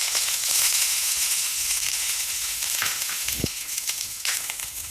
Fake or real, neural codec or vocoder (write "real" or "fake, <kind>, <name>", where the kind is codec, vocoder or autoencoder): fake, autoencoder, DAC-VAE